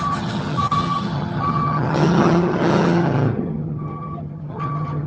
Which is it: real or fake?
fake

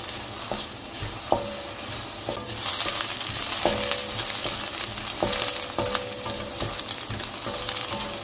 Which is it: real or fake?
real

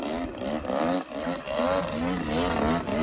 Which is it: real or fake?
real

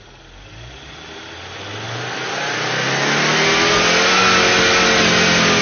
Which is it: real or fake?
real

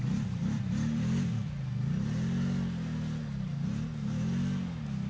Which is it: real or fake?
real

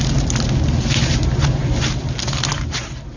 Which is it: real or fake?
real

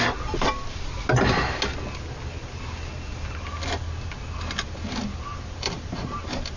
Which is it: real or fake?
real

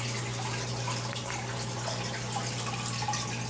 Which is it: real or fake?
real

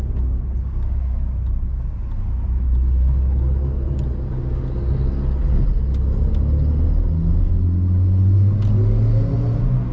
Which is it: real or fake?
real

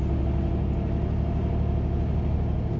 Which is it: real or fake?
real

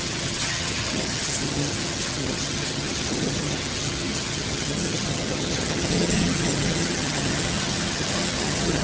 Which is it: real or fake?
fake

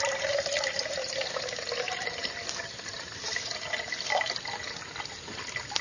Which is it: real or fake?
real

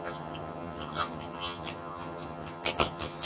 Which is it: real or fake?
fake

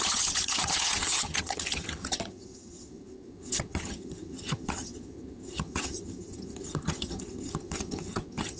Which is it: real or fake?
fake